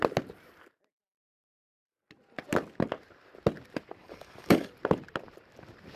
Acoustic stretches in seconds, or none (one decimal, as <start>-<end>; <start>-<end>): 0.0-4.0; 4.7-6.0